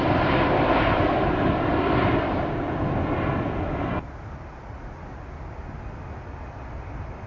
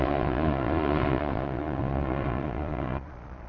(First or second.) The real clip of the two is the first